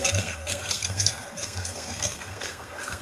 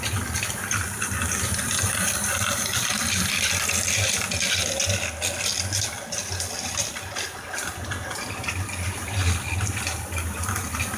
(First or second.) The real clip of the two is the second